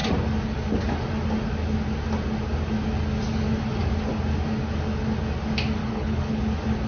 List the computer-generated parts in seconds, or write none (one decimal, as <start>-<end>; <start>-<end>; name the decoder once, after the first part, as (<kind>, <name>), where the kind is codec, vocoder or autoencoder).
5.8-6.4 (codec, HILCodec)